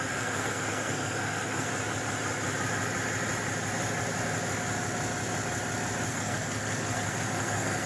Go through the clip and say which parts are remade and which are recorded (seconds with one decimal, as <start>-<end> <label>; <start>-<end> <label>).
0.0-1.7 remade; 1.7-6.1 recorded; 6.1-7.9 remade